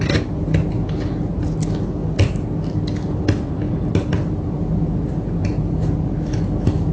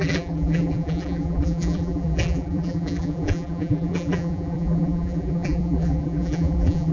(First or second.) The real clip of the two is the first